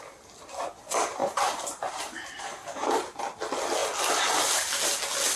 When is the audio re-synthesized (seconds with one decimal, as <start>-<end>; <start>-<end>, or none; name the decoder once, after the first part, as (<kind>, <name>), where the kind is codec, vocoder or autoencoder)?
1.2-3.2 (vocoder, BigVGAN v2)